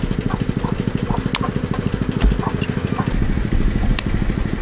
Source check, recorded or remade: recorded